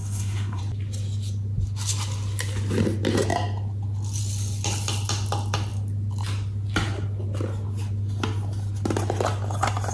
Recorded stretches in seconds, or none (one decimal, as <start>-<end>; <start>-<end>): 0.6-9.9